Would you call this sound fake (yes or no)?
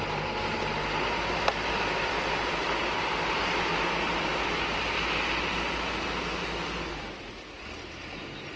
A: no